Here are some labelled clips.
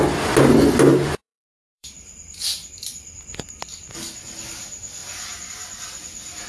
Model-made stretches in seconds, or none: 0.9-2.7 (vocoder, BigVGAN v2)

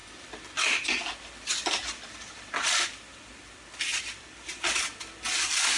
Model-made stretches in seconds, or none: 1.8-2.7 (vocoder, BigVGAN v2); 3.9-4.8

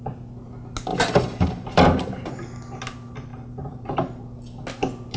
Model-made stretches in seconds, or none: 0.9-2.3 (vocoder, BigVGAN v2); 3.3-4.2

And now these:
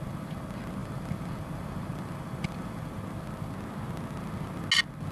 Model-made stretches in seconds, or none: 0.8-3.0 (vocoder, BigVGAN v2)